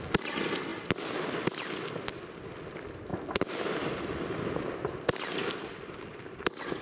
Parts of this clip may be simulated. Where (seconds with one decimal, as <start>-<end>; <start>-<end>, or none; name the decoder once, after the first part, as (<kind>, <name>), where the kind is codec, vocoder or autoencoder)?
none